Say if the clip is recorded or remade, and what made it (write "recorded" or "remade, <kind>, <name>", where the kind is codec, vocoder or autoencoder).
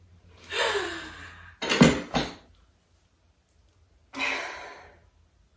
recorded